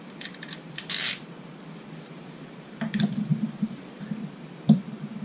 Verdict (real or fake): fake